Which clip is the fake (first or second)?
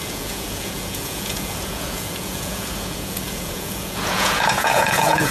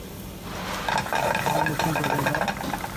first